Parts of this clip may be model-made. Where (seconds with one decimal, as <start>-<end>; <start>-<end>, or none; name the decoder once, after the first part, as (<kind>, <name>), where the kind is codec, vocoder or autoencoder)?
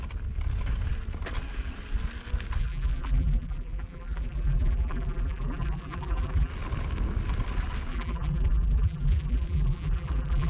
2.6-6.5 (vocoder, BigVGAN v2); 7.9-10.5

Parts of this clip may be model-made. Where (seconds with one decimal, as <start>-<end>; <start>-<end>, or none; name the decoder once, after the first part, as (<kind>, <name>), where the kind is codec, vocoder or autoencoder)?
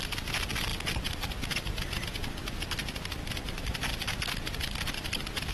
none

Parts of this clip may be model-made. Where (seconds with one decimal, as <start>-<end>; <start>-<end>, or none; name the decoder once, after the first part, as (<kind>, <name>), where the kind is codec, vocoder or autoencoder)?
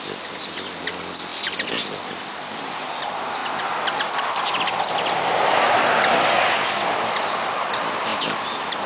8.1-8.9 (vocoder, BigVGAN v2)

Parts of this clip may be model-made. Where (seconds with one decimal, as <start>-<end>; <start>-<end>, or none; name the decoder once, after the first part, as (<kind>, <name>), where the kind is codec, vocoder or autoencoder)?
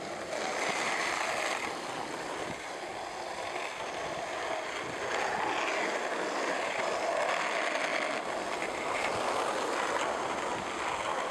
none